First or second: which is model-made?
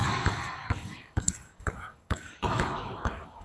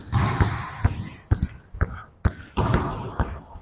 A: first